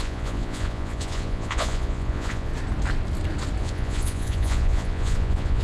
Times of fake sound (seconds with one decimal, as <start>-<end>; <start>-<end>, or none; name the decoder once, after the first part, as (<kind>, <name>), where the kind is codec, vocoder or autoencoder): 0.0-2.5 (vocoder, Vocos); 3.6-5.6